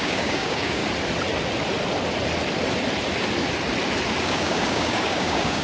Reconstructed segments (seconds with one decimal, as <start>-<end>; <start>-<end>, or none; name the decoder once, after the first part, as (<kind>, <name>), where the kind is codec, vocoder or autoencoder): 0.0-0.8 (codec, DAC); 4.2-5.6